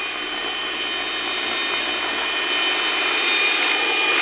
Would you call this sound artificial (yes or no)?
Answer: no